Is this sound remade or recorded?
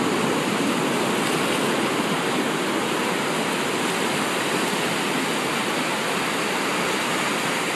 recorded